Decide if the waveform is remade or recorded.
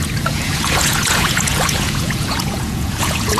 remade